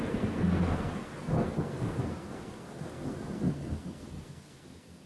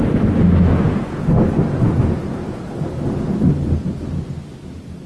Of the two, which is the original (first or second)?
second